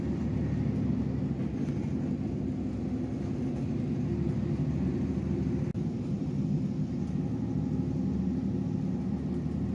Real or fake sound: real